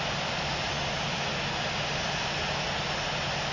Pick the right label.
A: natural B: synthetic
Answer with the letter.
A